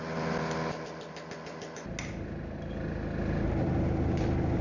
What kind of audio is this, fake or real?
real